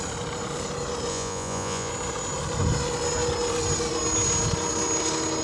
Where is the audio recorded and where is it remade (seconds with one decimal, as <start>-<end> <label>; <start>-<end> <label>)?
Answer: 0.0-1.1 recorded; 1.1-1.9 remade; 1.9-5.4 recorded